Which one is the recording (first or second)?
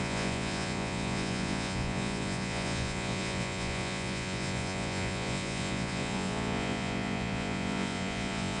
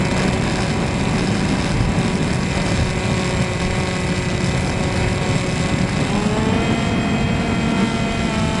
second